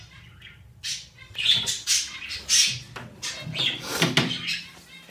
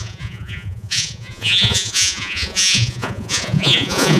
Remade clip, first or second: second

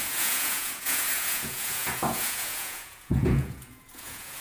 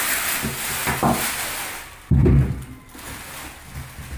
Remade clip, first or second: first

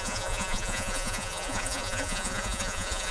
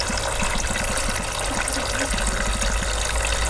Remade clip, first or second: first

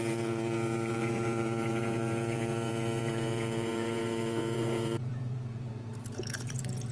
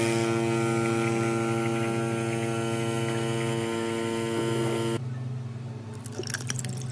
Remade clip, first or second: first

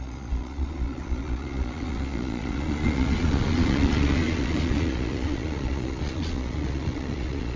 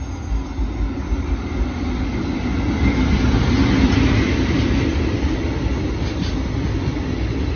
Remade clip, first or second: first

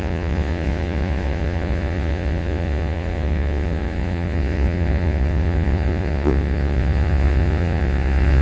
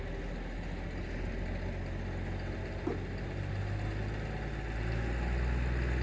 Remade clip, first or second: first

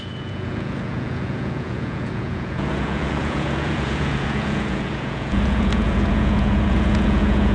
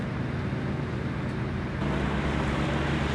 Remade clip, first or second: first